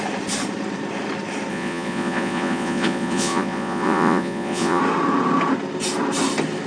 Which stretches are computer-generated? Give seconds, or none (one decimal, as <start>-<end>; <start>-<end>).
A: 1.5-4.8